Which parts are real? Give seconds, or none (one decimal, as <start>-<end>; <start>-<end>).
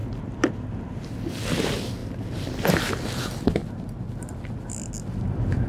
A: 0.9-2.0; 2.9-3.6; 4.4-5.7